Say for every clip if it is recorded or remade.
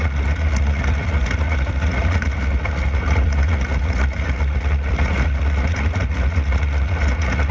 remade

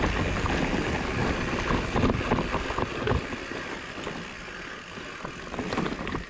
recorded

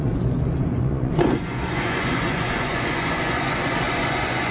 remade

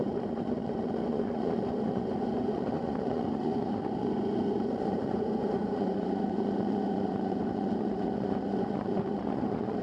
remade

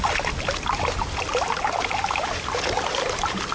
recorded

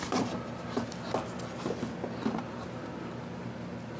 recorded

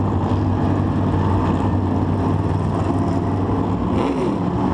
recorded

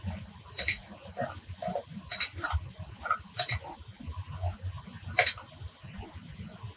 recorded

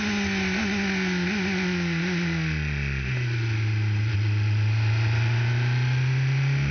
recorded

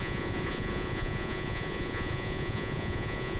remade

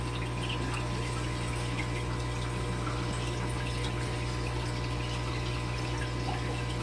recorded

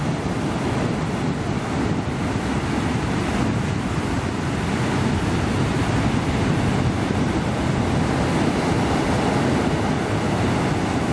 recorded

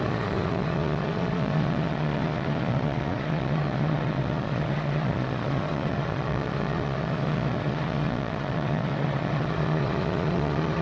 remade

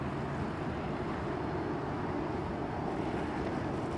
recorded